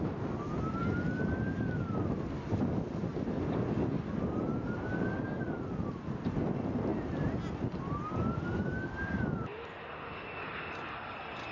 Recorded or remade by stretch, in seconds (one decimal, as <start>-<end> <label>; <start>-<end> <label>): 0.0-11.5 recorded